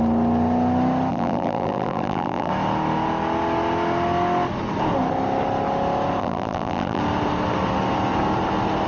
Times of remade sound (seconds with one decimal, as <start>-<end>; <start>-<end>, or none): 1.1-2.5; 6.2-7.0